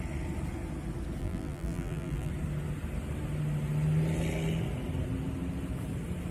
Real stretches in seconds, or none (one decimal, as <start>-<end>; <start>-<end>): 0.0-1.2; 2.3-6.3